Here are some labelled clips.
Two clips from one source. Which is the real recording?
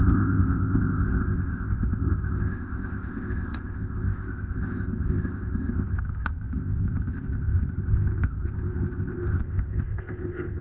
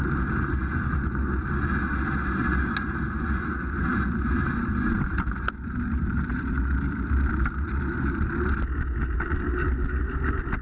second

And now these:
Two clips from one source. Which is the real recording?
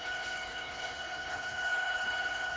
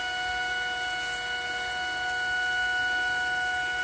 second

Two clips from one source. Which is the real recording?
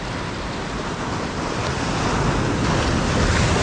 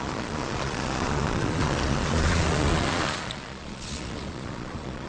first